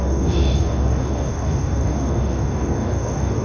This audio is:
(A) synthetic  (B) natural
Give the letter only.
A